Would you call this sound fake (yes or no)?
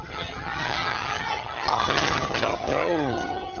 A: yes